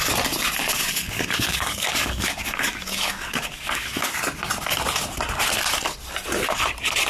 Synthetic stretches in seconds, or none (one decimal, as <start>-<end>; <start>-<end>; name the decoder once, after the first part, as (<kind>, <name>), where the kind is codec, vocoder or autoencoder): 0.6-4.1 (codec, DAC)